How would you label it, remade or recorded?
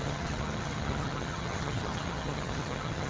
remade